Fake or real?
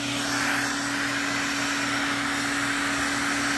real